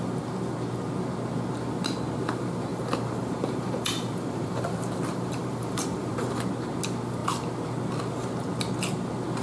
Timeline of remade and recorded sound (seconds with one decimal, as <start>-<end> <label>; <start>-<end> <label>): 0.0-2.7 recorded; 2.7-6.4 remade; 6.4-9.4 recorded